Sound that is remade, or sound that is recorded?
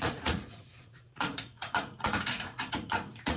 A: remade